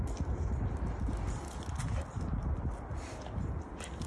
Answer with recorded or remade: recorded